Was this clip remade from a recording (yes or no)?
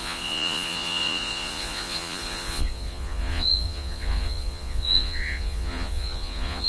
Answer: yes